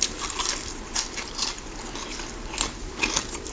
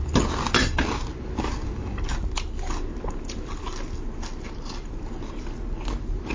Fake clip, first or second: first